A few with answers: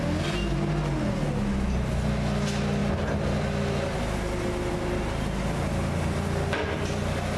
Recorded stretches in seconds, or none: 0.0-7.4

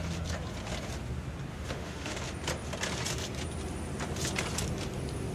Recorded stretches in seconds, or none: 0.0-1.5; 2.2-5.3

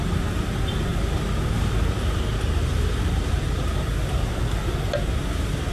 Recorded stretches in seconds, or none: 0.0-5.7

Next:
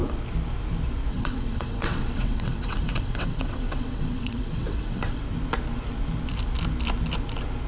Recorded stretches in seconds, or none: 0.0-1.1; 5.2-7.7